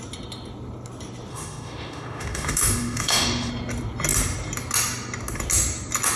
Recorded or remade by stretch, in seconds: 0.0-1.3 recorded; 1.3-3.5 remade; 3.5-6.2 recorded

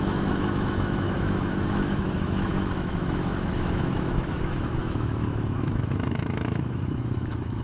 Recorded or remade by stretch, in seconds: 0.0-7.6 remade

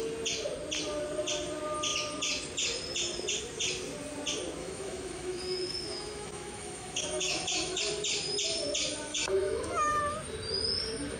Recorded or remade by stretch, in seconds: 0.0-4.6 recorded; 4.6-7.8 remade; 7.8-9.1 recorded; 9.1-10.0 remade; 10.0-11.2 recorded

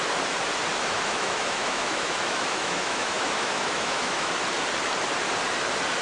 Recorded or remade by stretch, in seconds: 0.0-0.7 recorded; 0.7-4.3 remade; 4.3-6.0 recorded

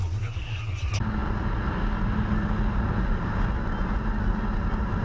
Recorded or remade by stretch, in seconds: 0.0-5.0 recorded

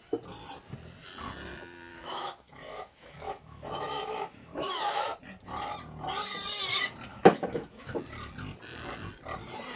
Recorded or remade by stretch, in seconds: 0.0-1.9 recorded; 1.9-5.2 remade; 5.2-7.1 recorded; 7.1-7.9 remade; 7.9-9.8 recorded